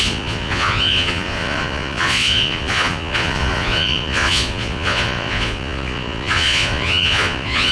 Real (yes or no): no